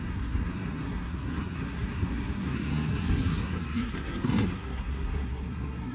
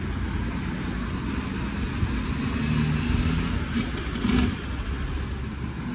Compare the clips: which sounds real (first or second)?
second